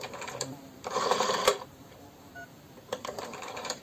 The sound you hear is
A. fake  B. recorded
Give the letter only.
A